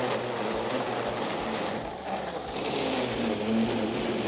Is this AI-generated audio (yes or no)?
no